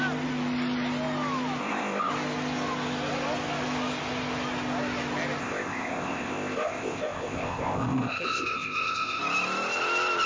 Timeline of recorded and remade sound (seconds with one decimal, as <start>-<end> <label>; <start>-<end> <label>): 0.0-1.6 recorded; 1.6-2.1 remade; 2.1-5.4 recorded; 5.4-9.2 remade; 9.2-10.3 recorded